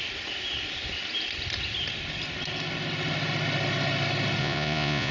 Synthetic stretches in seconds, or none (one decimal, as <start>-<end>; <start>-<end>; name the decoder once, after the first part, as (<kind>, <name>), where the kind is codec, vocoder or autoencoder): 4.4-5.1 (vocoder, Vocos)